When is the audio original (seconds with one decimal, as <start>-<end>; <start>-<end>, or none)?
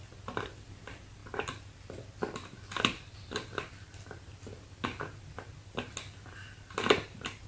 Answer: 0.0-7.5